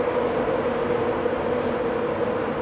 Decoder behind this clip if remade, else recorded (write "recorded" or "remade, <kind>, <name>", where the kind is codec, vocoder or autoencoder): recorded